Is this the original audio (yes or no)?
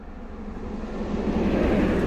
yes